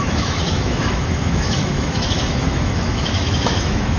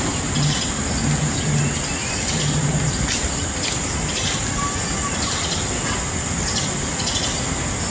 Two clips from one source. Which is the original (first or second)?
second